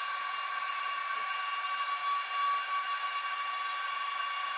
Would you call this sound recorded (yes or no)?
yes